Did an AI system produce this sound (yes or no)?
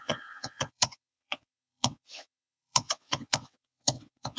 yes